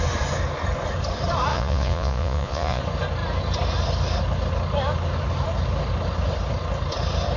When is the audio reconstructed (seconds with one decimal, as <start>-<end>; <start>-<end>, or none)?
1.5-2.8